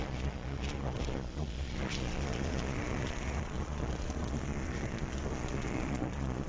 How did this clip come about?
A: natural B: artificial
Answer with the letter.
B